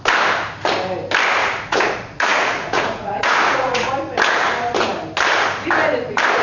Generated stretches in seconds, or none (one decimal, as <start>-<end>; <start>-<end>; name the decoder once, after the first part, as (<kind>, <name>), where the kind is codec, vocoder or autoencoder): 1.4-3.9 (vocoder, Vocos)